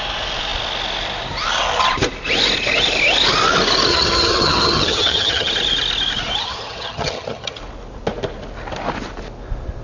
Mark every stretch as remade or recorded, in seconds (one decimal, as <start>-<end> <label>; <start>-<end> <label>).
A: 0.0-3.9 recorded; 3.9-5.5 remade; 5.5-6.4 recorded; 6.4-7.6 remade; 7.6-9.8 recorded